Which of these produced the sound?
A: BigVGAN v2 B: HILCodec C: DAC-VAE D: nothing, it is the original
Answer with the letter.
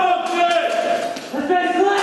D